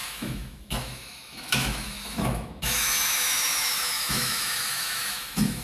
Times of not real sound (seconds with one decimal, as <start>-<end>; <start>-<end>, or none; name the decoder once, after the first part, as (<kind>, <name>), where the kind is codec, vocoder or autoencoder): 0.0-5.6 (autoencoder, DAC-VAE)